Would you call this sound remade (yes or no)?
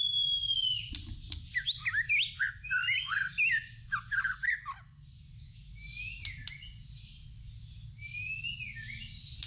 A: no